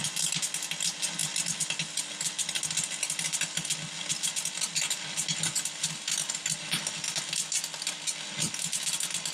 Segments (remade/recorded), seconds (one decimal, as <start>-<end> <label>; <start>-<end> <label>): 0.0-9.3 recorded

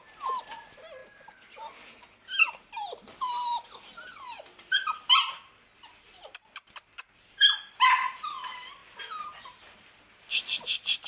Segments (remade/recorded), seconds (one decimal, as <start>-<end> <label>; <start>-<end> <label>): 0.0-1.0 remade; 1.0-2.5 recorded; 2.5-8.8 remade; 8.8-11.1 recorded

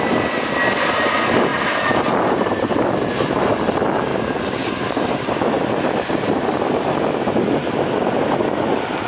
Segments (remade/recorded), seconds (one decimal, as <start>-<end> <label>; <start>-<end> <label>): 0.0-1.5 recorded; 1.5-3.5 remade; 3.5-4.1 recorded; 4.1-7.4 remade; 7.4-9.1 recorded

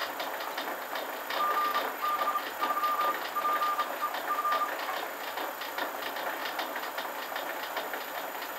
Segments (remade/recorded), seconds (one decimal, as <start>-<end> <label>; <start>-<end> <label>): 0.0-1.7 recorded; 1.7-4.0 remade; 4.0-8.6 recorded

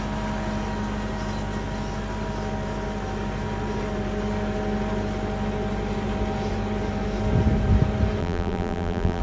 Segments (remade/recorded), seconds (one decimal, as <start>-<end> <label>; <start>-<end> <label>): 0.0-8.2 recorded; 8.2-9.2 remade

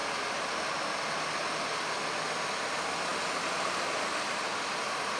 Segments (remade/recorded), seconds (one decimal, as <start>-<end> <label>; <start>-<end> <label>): 0.0-5.2 recorded

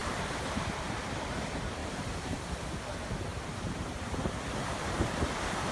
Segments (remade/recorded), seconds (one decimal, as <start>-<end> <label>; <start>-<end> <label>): 0.0-0.5 recorded; 0.5-5.7 remade

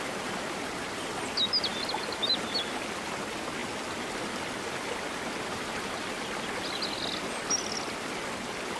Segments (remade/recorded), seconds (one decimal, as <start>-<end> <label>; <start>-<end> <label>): 0.0-8.8 recorded